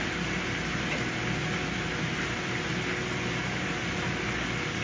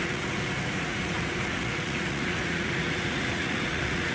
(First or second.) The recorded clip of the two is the first